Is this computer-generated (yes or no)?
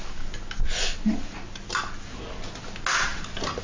no